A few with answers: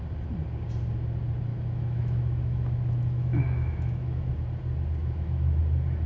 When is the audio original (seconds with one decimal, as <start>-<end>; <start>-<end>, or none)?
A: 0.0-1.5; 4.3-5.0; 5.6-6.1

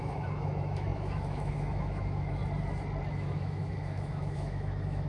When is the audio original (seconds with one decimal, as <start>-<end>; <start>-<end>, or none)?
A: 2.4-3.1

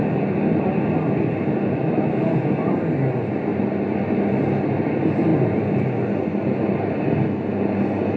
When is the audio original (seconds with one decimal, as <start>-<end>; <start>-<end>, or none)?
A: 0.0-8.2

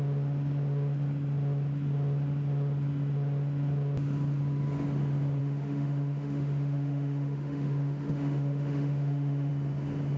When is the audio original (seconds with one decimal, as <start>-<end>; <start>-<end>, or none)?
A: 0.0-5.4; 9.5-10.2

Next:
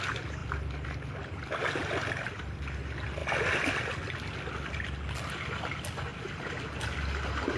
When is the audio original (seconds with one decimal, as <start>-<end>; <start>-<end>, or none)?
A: 0.0-7.6

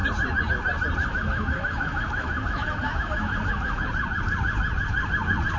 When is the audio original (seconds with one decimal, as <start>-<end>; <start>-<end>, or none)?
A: 0.0-1.1; 3.8-5.6

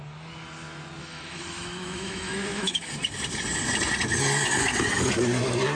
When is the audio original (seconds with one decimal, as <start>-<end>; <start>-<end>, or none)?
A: 0.0-1.0; 2.9-5.7

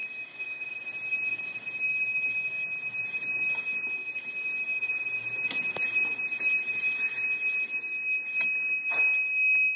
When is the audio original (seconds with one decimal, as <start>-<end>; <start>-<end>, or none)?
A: 0.7-9.8